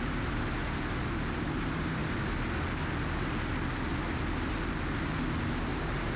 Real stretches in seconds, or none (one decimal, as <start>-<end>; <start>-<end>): 0.6-1.5; 2.0-5.6